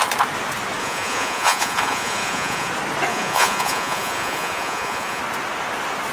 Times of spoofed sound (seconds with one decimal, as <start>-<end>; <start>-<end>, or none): 0.8-2.7; 3.1-5.2

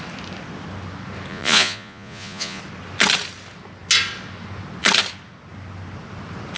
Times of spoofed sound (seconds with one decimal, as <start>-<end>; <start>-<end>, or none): 1.3-2.6

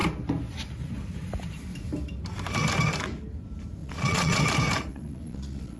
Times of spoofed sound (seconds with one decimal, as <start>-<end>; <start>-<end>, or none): 3.8-4.4; 4.9-5.8

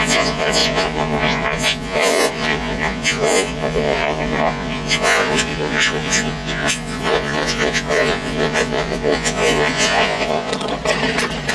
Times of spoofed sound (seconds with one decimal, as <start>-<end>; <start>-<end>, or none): 0.0-10.5

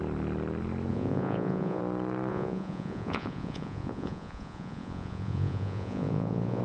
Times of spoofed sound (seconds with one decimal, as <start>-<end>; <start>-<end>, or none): 0.9-1.8; 2.3-6.6

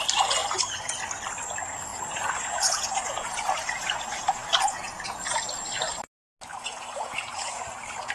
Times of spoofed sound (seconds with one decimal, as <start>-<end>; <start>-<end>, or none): 1.9-5.2; 6.5-7.5

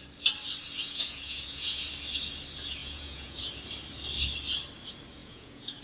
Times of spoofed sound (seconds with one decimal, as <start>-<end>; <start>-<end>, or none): 0.8-1.9; 2.8-3.5; 5.2-5.8